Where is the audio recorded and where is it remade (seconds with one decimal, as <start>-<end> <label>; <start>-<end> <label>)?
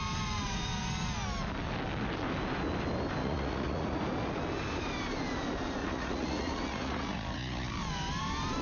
0.0-3.2 recorded; 3.2-4.0 remade; 4.0-5.8 recorded; 5.8-7.7 remade; 7.7-8.6 recorded